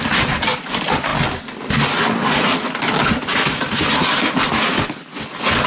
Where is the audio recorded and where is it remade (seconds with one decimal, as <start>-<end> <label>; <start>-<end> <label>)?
0.0-5.7 recorded